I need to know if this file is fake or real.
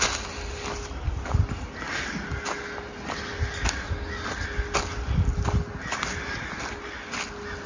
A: real